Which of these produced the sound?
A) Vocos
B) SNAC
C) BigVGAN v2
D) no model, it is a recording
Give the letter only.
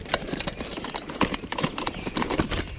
C